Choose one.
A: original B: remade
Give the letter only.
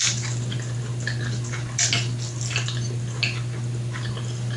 A